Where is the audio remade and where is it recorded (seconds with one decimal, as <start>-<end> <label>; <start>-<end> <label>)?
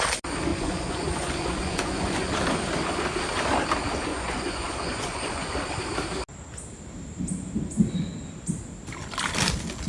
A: 0.0-0.5 recorded; 0.5-2.3 remade; 2.3-4.1 recorded; 4.1-5.5 remade; 5.5-9.9 recorded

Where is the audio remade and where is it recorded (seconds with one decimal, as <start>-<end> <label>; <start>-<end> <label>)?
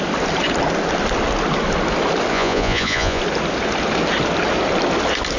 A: 0.0-2.3 recorded; 2.3-3.2 remade; 3.2-5.4 recorded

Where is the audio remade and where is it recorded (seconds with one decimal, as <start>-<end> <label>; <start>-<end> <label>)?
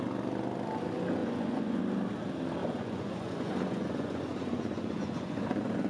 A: 0.0-1.2 recorded; 1.2-1.8 remade; 1.8-2.6 recorded; 2.6-5.9 remade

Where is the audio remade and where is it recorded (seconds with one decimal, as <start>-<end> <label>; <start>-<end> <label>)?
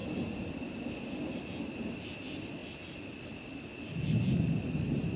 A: 0.0-5.2 recorded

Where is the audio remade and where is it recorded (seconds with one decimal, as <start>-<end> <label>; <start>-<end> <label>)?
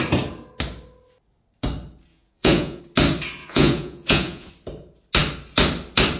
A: 0.0-2.1 recorded; 2.1-2.8 remade; 2.8-3.4 recorded; 3.4-4.5 remade; 4.5-6.2 recorded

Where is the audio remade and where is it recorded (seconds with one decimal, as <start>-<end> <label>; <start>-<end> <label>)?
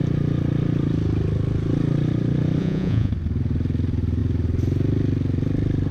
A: 0.0-2.6 recorded; 2.6-3.1 remade; 3.1-5.9 recorded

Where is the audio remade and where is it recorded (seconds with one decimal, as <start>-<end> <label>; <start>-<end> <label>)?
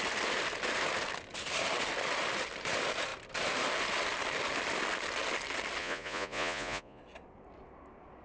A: 0.0-5.8 recorded; 5.8-7.0 remade; 7.0-8.2 recorded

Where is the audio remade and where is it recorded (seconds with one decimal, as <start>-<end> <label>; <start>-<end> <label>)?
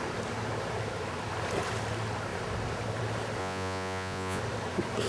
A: 0.0-3.4 recorded; 3.4-4.4 remade; 4.4-5.1 recorded